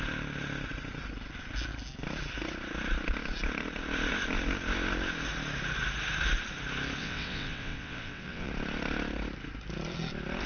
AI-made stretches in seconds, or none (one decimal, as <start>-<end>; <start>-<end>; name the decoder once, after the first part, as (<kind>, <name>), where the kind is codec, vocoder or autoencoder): 7.0-8.5 (vocoder, WaveNeXt)